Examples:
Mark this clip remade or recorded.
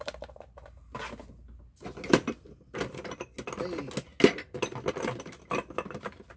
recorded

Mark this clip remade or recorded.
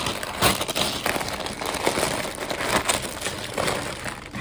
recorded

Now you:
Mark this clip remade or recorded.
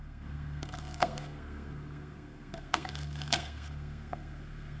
remade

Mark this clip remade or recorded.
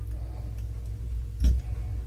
recorded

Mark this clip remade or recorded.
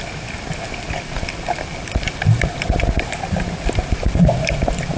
recorded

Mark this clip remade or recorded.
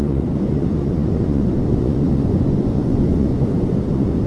remade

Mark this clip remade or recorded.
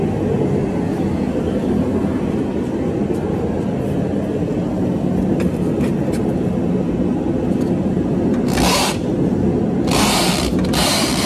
recorded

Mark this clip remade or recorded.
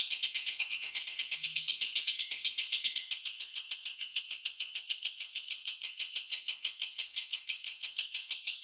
remade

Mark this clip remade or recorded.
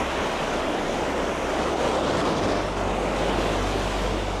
remade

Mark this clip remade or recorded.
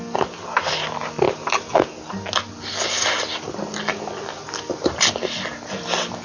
recorded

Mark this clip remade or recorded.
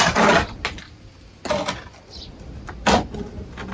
recorded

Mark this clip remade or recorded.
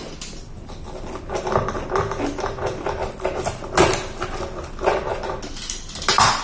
recorded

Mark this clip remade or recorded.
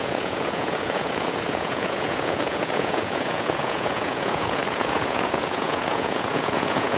remade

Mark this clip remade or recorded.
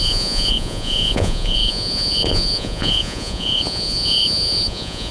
remade